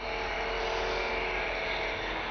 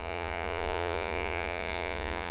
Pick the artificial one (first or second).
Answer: second